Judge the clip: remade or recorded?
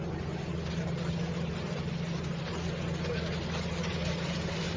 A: recorded